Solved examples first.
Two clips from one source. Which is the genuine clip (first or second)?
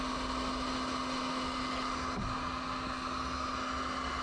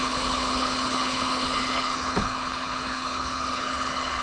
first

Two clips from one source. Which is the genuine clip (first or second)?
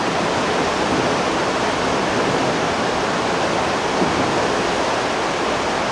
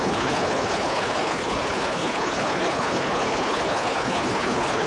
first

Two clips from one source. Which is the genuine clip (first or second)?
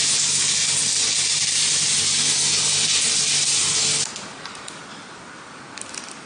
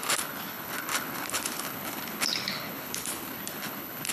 first